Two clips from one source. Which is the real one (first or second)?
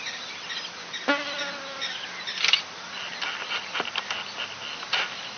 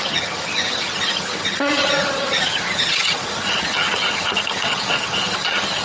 first